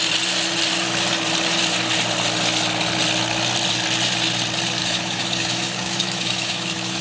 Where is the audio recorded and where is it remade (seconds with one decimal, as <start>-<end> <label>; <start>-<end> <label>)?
0.0-4.8 recorded; 4.8-7.0 remade